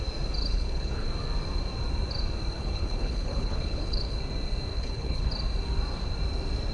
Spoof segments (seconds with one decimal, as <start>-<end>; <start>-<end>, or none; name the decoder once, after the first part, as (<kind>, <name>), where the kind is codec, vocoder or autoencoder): 0.4-1.1 (codec, HILCodec); 2.5-4.2; 4.7-5.3